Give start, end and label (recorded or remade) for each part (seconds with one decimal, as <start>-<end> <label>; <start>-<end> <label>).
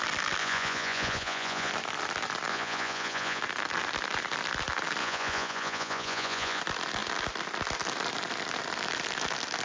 0.0-0.4 recorded; 0.4-1.7 remade; 1.7-2.5 recorded; 2.5-3.4 remade; 3.4-5.0 recorded; 5.0-6.6 remade; 6.6-9.6 recorded